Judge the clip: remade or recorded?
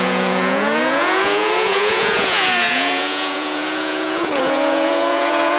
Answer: remade